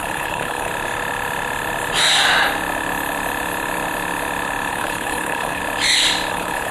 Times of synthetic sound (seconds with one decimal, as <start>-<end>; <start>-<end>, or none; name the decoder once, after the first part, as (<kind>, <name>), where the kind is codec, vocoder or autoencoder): 0.0-0.7 (codec, HILCodec); 4.7-5.6; 6.3-6.7